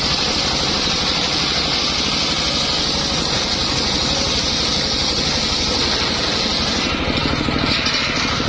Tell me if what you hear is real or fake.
real